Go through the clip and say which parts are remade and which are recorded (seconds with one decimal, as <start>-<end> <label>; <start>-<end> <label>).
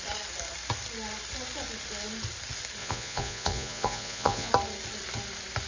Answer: 0.0-2.8 recorded; 2.8-4.5 remade; 4.5-5.7 recorded